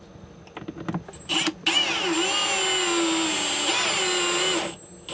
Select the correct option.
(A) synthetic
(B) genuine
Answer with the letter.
B